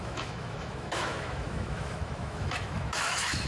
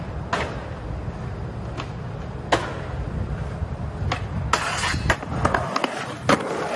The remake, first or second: first